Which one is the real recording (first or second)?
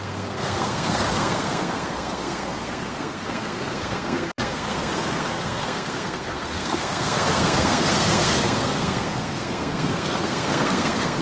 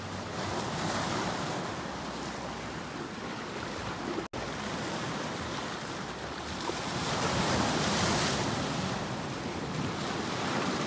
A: second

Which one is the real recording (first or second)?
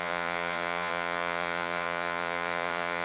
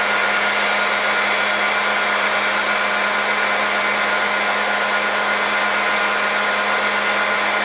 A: second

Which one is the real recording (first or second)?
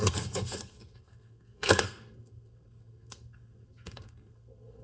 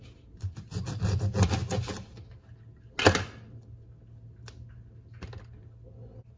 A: second